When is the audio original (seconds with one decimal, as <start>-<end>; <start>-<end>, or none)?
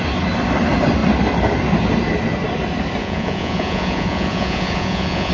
0.0-3.0